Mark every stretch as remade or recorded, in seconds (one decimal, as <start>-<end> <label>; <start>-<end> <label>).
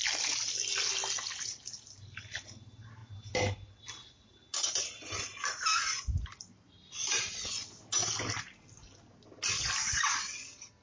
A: 0.0-10.8 recorded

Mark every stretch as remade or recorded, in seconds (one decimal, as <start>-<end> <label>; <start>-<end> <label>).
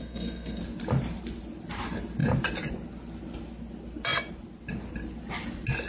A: 0.0-0.6 remade; 0.6-5.9 recorded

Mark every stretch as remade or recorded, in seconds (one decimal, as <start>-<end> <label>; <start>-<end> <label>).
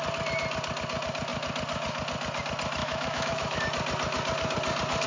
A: 0.0-2.8 recorded; 2.8-3.6 remade; 3.6-5.1 recorded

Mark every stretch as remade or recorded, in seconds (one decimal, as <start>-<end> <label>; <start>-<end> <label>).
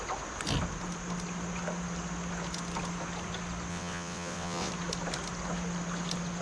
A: 0.0-3.7 recorded; 3.7-4.7 remade; 4.7-6.4 recorded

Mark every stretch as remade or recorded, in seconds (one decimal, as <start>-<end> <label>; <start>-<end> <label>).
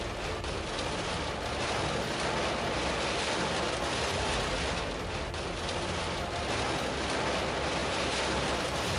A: 0.0-7.8 recorded; 7.8-9.0 remade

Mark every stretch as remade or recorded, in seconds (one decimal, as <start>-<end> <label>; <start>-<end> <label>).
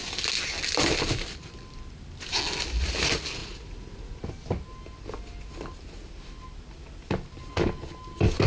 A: 0.0-3.4 recorded; 3.4-4.2 remade; 4.2-8.5 recorded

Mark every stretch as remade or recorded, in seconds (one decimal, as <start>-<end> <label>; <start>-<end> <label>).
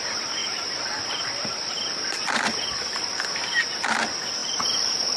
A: 0.0-0.4 recorded; 0.4-3.2 remade; 3.2-4.4 recorded; 4.4-5.2 remade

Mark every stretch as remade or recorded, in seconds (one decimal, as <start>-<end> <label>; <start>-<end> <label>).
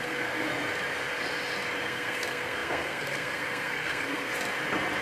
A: 0.0-0.5 remade; 0.5-1.8 recorded; 1.8-4.3 remade; 4.3-5.0 recorded